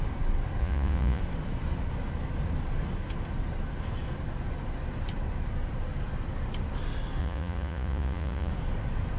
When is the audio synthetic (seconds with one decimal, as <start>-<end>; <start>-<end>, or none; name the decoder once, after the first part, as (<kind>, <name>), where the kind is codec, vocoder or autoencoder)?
0.6-1.2 (vocoder, Vocos); 7.2-8.5